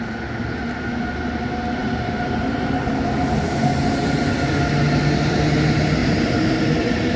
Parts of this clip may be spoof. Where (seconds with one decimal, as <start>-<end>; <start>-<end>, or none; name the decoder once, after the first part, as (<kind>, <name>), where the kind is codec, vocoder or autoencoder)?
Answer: 1.8-2.8 (vocoder, BigVGAN v2); 6.0-7.2